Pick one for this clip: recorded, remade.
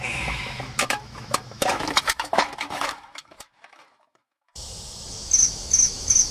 remade